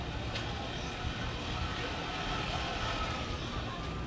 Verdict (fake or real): real